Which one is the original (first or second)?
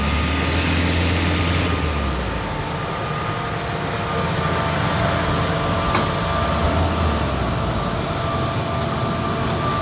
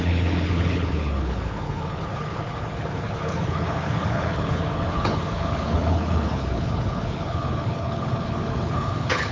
first